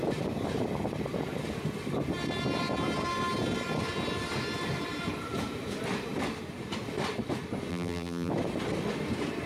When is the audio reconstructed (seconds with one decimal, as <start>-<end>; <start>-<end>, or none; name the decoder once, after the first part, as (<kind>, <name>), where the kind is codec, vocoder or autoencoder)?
7.7-8.3 (vocoder, BigVGAN v2)